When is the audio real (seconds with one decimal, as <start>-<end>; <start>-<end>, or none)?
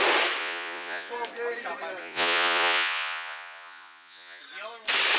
0.0-0.4; 1.1-2.0; 4.4-5.2